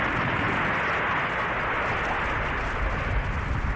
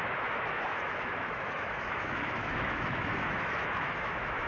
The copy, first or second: second